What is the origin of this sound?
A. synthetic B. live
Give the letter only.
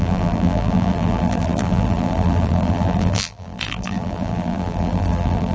A